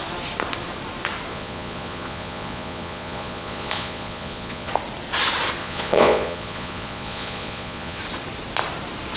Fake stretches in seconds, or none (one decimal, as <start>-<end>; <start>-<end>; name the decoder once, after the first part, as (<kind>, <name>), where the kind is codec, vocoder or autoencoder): 1.3-4.7 (vocoder, Vocos); 5.6-8.0